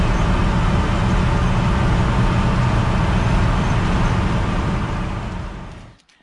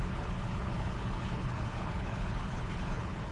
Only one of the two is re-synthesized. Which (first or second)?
second